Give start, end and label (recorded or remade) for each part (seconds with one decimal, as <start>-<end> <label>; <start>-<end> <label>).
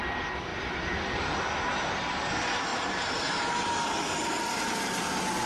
0.0-5.5 remade